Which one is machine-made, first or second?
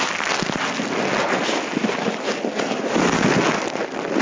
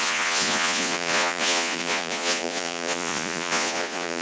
second